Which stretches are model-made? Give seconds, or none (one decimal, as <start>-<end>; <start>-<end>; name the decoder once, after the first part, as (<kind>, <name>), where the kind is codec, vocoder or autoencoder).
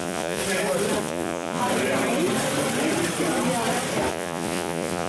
0.0-0.4 (vocoder, Vocos); 1.0-1.6; 4.1-5.1